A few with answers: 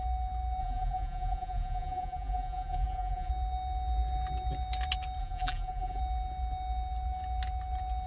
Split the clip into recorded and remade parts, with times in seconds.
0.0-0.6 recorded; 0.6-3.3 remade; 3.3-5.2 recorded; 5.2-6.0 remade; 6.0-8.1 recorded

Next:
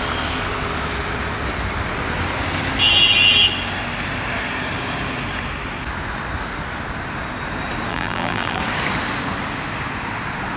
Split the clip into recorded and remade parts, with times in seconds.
0.0-7.9 recorded; 7.9-8.6 remade; 8.6-10.6 recorded